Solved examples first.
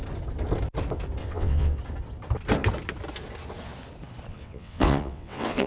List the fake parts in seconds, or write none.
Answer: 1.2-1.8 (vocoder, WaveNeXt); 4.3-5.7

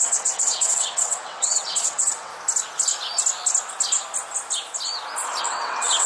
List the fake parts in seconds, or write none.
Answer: 0.0-2.3 (vocoder, WaveNeXt); 5.4-6.1

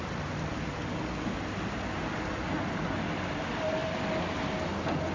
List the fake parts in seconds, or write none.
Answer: none

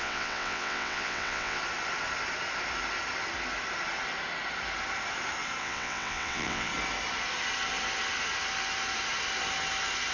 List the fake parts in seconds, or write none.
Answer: 0.0-1.6 (vocoder, WaveNeXt); 5.6-6.7